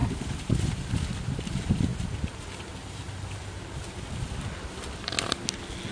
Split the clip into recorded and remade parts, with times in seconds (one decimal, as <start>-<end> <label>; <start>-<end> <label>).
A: 0.0-0.6 remade; 0.6-1.9 recorded; 1.9-4.0 remade; 4.0-5.9 recorded